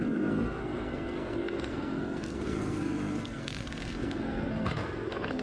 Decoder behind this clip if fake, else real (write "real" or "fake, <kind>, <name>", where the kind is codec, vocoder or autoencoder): fake, codec, SNAC